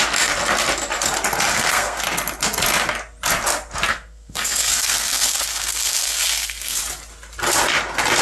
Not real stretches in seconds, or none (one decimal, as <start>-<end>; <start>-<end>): 1.5-2.0; 3.9-6.8